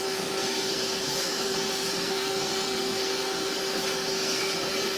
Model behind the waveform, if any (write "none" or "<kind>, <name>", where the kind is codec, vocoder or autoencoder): codec, SNAC